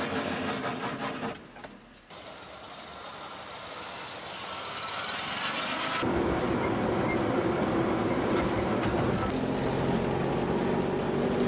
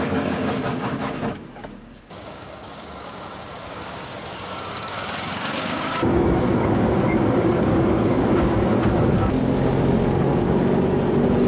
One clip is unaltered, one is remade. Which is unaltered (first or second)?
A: first